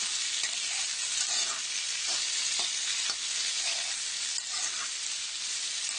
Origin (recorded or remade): recorded